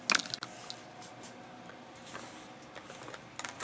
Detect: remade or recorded recorded